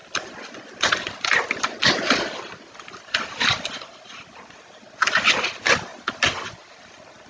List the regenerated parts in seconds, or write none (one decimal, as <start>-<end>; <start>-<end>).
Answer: none

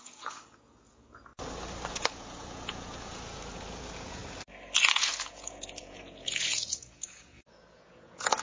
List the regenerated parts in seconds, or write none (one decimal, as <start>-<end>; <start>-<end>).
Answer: 0.0-1.3; 1.9-4.2; 4.8-8.4

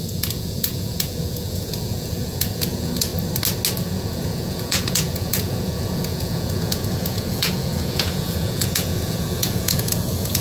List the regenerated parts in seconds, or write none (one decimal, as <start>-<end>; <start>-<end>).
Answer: 0.0-3.1; 3.8-10.4

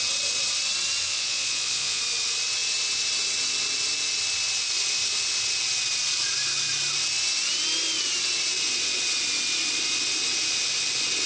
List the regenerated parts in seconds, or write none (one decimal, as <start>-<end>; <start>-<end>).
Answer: 1.0-2.0

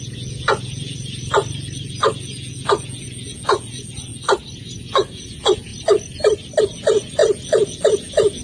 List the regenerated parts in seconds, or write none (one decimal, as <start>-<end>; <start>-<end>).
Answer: 0.0-1.4; 2.2-4.1; 4.6-5.7; 6.6-8.4

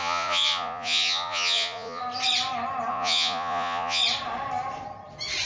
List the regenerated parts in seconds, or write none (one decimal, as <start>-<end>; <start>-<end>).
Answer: 0.0-2.0; 2.9-4.0